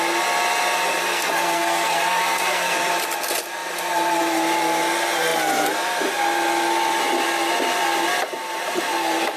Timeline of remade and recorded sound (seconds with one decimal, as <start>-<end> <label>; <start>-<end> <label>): 0.0-1.0 recorded; 1.0-2.9 remade; 2.9-9.4 recorded